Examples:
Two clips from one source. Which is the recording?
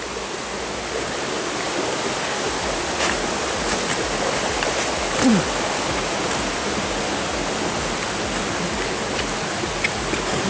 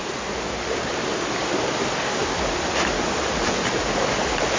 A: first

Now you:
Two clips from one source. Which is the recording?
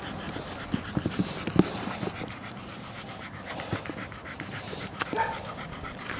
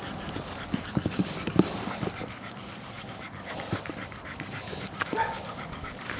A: first